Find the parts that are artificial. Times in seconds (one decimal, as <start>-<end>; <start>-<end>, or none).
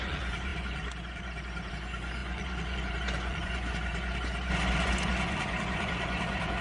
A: 0.0-6.6